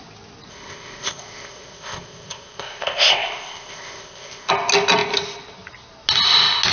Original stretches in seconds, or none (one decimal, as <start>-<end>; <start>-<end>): 0.0-0.5; 4.5-6.7

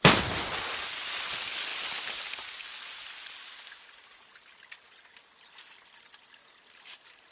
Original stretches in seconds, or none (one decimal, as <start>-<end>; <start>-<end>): 0.0-7.3

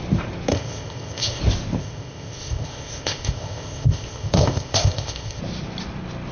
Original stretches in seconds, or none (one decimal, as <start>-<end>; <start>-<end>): 0.0-0.5; 1.4-1.8; 5.4-6.3